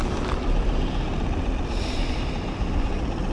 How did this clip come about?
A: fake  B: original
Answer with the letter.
B